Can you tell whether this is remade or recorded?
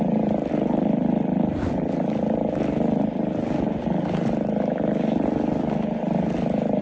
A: recorded